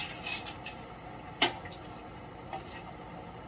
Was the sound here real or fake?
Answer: real